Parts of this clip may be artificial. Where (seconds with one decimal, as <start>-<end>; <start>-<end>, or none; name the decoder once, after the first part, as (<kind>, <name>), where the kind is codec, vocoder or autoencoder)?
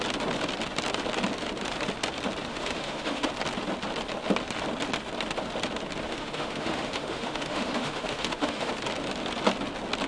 2.5-3.3 (autoencoder, DAC-VAE); 6.1-8.7